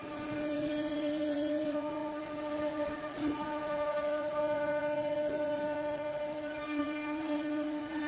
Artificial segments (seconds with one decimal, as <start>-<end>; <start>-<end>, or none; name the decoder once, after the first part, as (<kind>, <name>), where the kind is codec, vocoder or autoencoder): 0.0-8.1 (vocoder, Vocos)